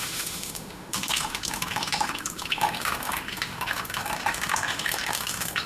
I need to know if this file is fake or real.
fake